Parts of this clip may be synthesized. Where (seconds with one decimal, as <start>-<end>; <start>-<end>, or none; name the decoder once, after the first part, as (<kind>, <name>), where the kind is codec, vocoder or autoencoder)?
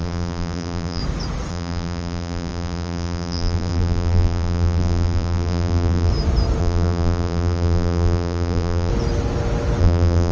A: 0.0-1.0 (vocoder, BigVGAN v2); 1.5-6.1; 6.6-8.9; 9.8-10.3